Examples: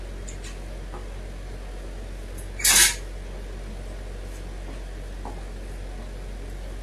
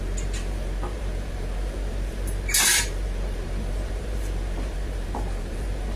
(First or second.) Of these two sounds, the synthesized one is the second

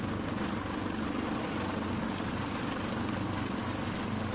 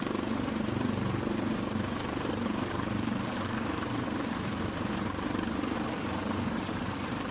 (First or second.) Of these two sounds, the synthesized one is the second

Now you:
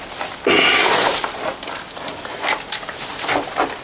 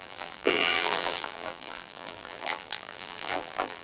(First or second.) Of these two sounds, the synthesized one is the second